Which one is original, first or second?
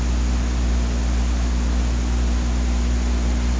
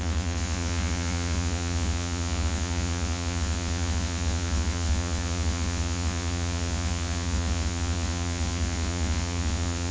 first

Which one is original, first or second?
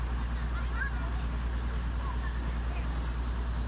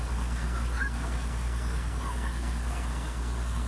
first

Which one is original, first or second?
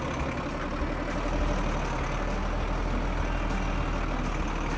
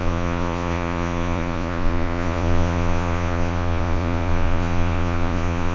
first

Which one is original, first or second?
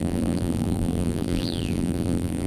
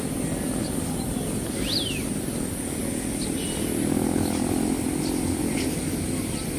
second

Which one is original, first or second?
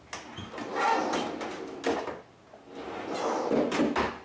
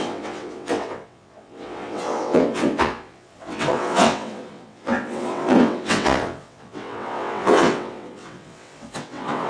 first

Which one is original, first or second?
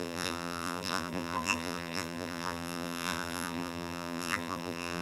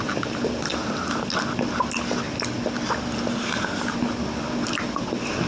second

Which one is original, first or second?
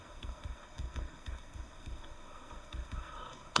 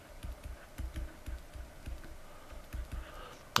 second